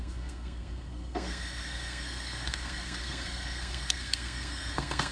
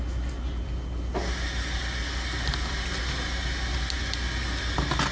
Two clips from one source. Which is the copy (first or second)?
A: first